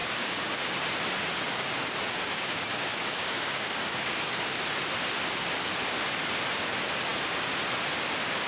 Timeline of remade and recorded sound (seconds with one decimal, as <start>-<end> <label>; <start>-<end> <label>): 0.0-0.8 remade; 0.8-1.6 recorded; 1.6-4.7 remade; 4.7-8.5 recorded